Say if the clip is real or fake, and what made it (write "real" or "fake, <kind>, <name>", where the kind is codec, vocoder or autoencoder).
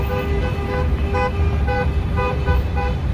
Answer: real